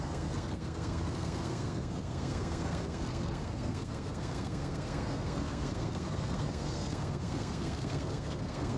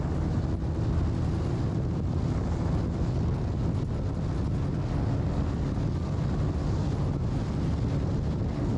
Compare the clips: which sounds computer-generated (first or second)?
first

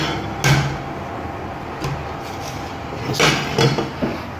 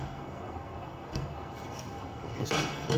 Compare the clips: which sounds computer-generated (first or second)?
second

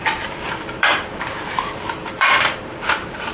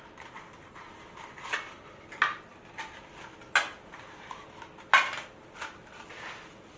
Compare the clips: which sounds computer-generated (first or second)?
first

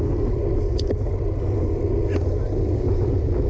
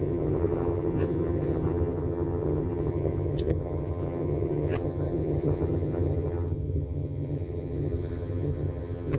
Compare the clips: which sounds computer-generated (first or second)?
second